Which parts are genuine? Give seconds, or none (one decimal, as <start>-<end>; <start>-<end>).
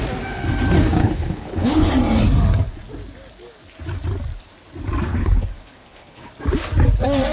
0.0-1.0; 1.9-5.1; 6.3-7.3